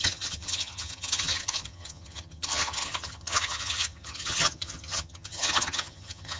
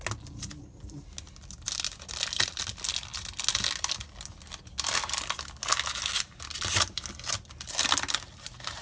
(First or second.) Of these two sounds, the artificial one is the first